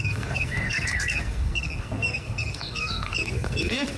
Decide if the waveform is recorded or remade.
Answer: remade